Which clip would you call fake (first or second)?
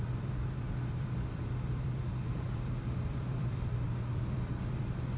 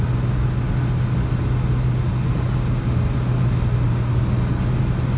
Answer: first